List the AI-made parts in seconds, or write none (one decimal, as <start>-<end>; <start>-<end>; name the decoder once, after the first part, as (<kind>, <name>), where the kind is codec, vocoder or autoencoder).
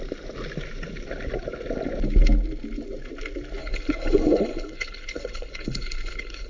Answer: 3.6-6.5 (codec, HILCodec)